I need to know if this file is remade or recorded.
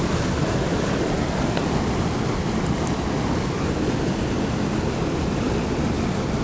recorded